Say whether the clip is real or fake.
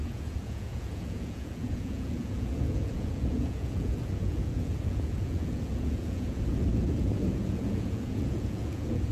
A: fake